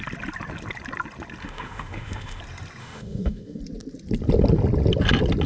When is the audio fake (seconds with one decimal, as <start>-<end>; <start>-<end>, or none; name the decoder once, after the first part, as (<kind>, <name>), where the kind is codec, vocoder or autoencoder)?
1.4-2.4 (autoencoder, DAC-VAE); 2.8-3.6